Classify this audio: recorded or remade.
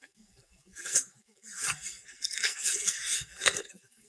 remade